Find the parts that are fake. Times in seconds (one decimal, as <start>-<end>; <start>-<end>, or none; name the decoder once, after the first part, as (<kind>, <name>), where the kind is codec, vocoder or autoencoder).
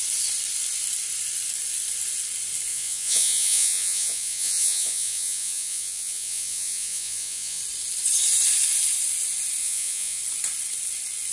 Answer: 2.7-7.6 (vocoder, Vocos); 9.6-10.2